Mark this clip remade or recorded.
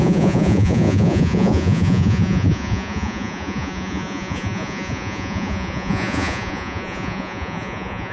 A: remade